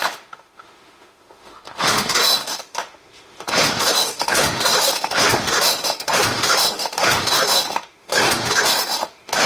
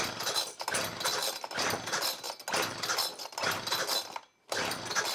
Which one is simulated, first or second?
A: first